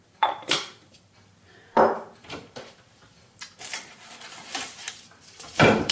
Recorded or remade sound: remade